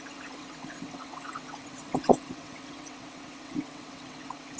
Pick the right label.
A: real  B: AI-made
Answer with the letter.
B